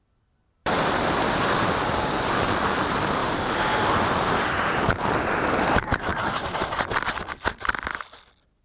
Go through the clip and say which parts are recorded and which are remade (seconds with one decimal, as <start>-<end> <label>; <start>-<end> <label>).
0.0-0.6 recorded; 0.6-2.3 remade; 2.3-3.2 recorded; 3.2-4.5 remade; 4.5-8.6 recorded

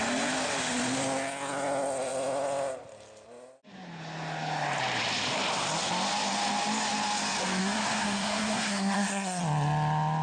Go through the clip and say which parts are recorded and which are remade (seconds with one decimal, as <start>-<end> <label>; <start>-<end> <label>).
0.0-7.6 recorded; 7.6-9.4 remade; 9.4-10.2 recorded

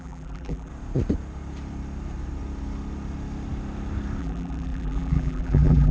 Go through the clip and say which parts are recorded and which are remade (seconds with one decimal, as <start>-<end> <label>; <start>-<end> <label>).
0.0-0.7 remade; 0.7-4.2 recorded; 4.2-5.9 remade

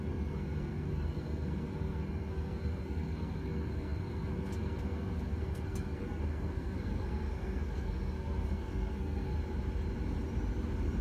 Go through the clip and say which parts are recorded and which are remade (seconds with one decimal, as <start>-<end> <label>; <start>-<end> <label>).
0.0-9.3 remade; 9.3-11.0 recorded

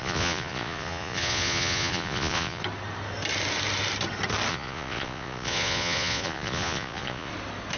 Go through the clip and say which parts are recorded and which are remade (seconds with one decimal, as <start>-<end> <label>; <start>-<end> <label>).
0.0-2.6 remade; 2.6-4.5 recorded; 4.5-7.3 remade; 7.3-7.8 recorded